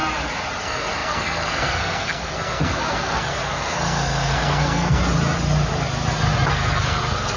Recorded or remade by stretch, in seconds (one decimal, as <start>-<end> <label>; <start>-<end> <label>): 0.0-0.6 recorded; 0.6-5.0 remade; 5.0-6.5 recorded; 6.5-7.4 remade